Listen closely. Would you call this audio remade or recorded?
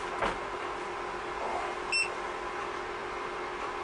recorded